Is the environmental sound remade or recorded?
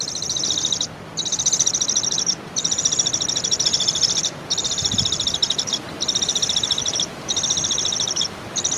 remade